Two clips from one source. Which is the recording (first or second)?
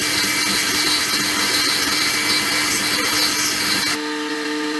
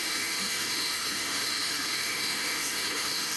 first